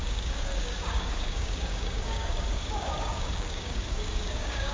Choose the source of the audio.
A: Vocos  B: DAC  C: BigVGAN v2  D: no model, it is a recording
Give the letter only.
B